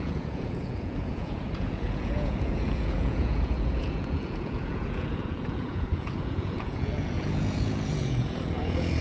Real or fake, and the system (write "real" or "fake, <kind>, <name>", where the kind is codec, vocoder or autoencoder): fake, vocoder, Vocos